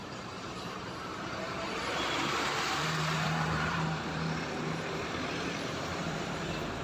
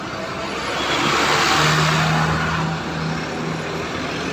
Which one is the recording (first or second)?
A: second